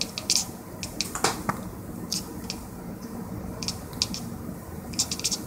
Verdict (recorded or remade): recorded